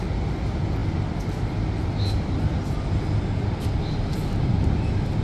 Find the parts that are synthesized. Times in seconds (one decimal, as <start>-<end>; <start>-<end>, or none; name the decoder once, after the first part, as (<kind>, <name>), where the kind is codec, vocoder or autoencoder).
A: none